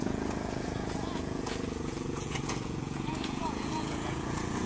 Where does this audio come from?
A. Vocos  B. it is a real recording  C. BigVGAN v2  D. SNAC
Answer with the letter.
A